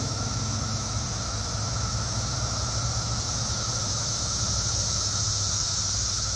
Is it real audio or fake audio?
fake